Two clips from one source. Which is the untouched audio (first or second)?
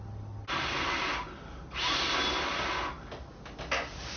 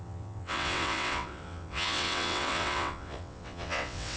first